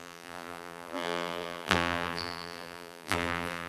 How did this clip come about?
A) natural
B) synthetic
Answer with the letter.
B